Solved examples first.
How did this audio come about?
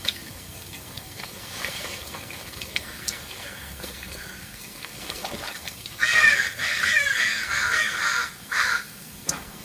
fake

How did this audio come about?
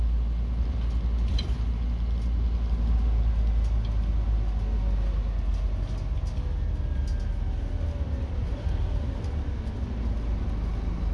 real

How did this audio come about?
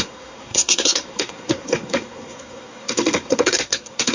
fake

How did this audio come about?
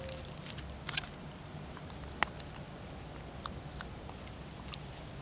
real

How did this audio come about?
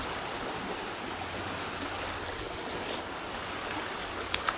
real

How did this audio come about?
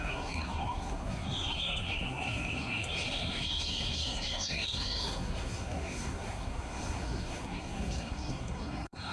fake